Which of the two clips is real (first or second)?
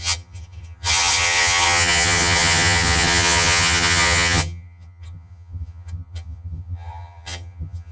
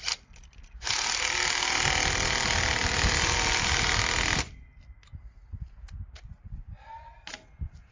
second